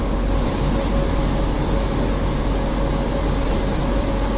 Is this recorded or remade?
recorded